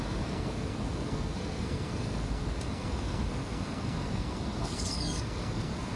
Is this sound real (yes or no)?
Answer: no